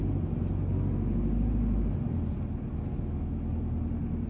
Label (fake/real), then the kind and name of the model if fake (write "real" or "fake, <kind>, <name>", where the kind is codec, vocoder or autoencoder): real